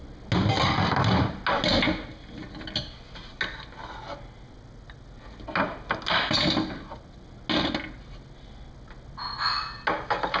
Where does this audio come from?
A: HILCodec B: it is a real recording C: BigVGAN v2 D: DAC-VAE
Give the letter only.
B